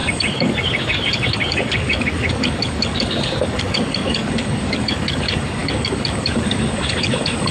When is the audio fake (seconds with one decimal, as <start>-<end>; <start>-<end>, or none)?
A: 0.0-7.5